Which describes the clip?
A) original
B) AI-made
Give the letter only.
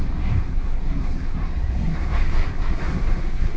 B